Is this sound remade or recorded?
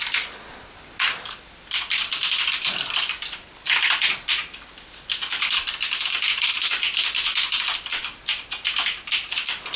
recorded